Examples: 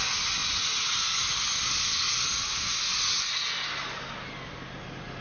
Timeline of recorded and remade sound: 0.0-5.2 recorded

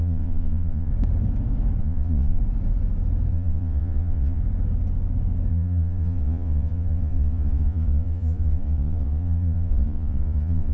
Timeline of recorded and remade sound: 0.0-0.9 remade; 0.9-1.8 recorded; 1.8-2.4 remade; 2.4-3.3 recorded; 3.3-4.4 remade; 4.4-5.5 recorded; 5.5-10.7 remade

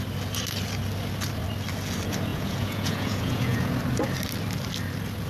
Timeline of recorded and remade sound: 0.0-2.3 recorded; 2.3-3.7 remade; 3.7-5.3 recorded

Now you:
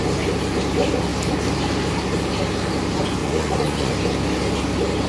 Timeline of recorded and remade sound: 0.0-3.2 recorded; 3.2-3.9 remade; 3.9-5.1 recorded

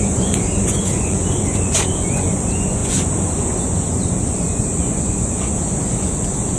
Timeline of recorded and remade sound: 0.0-6.6 remade

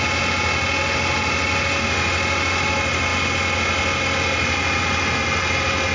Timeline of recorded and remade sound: 0.0-5.9 recorded

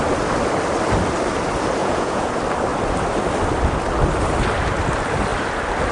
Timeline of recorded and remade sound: 0.0-1.8 recorded; 1.8-2.3 remade; 2.3-5.9 recorded